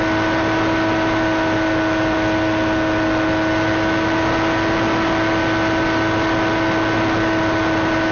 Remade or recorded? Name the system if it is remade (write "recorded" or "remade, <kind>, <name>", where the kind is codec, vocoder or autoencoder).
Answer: recorded